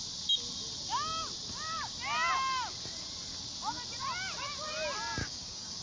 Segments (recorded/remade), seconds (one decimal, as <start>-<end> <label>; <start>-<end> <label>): 0.0-5.2 recorded; 5.2-5.8 remade